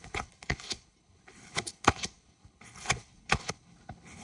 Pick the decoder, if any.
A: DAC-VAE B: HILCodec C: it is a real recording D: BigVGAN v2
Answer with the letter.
B